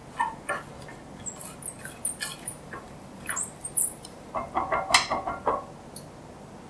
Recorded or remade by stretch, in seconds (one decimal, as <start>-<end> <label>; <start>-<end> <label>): 0.0-2.3 recorded; 2.3-4.3 remade; 4.3-6.7 recorded